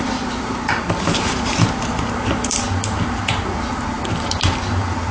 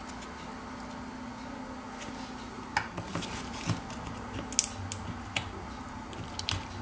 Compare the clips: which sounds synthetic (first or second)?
first